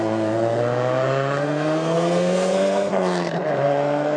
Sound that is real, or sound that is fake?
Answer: fake